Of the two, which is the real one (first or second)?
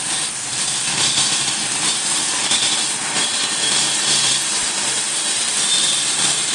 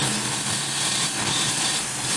second